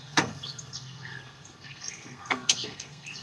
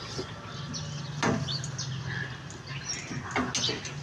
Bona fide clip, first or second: second